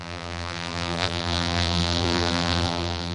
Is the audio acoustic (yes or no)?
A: no